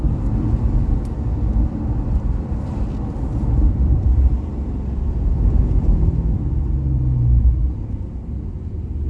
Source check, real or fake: fake